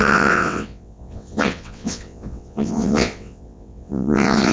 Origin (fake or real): fake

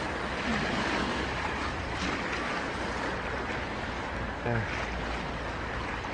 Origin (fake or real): real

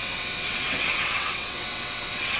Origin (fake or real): fake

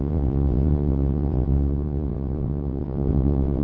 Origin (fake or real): fake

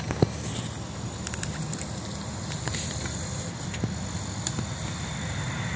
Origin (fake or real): real